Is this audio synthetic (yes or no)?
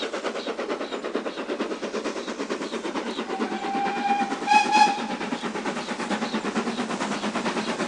no